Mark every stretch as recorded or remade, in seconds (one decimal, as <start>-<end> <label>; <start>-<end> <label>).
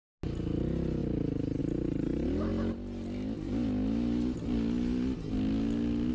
0.0-6.1 recorded